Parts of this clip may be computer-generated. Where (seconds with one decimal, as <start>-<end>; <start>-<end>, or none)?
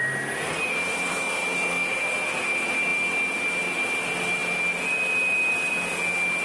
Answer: 1.1-2.0